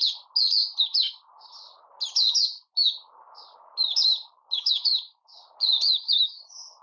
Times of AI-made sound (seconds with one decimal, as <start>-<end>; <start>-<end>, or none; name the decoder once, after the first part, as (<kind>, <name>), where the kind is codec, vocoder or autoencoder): 5.9-6.8 (autoencoder, DAC-VAE)